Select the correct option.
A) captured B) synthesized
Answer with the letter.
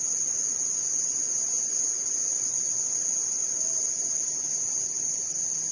A